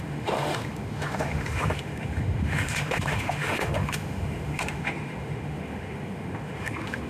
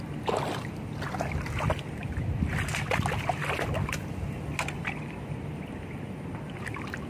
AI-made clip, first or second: first